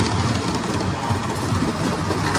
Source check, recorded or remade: recorded